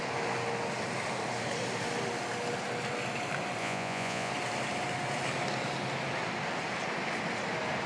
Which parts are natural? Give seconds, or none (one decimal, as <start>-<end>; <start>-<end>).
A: 0.0-3.6; 4.3-7.9